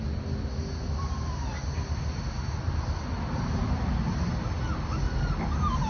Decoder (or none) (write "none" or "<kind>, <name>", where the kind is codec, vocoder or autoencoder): none